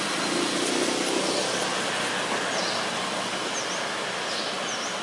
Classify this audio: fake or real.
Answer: real